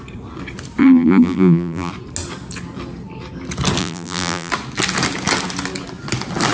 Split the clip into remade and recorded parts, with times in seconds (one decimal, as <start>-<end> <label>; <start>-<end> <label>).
0.0-0.8 recorded; 0.8-1.9 remade; 1.9-3.8 recorded; 3.8-4.5 remade; 4.5-6.5 recorded